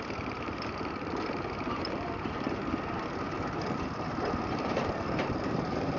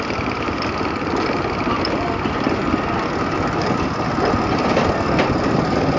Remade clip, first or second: first